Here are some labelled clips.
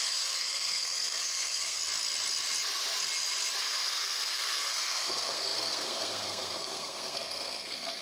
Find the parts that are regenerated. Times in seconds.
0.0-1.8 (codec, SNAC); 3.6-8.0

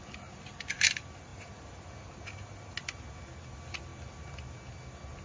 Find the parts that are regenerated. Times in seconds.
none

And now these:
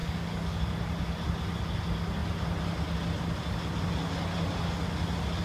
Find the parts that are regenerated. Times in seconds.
0.0-0.6 (codec, DAC)

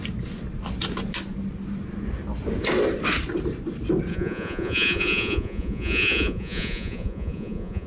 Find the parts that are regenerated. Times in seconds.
4.1-7.9 (vocoder, Vocos)

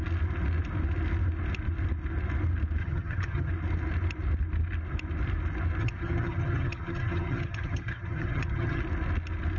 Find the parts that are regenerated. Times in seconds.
2.8-3.5 (vocoder, HiFi-GAN); 5.8-8.8

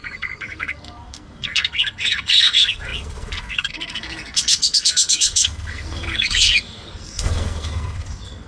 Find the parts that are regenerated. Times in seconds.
0.0-8.5 (codec, SNAC)

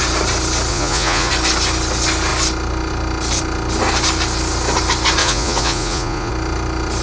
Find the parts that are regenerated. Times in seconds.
0.7-1.3 (vocoder, Vocos); 5.2-6.3

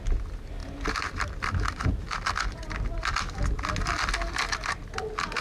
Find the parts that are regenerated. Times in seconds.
none